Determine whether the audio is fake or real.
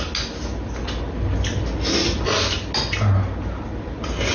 real